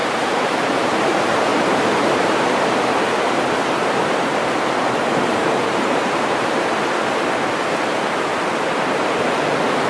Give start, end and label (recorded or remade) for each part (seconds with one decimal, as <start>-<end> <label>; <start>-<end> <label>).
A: 0.0-1.0 remade; 1.0-1.5 recorded; 1.5-6.7 remade; 6.7-9.9 recorded